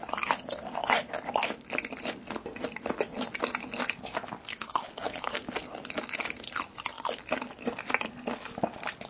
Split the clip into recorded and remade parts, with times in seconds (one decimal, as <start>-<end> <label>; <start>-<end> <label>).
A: 0.0-4.6 recorded; 4.6-5.3 remade; 5.3-9.1 recorded